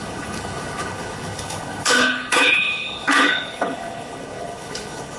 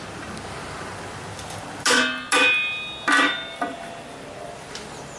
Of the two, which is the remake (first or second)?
first